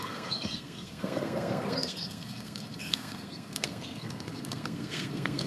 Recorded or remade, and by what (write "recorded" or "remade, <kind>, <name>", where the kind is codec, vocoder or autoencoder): remade, codec, SNAC